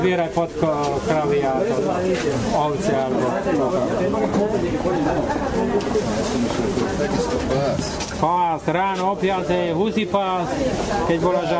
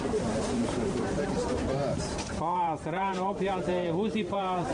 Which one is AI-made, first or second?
second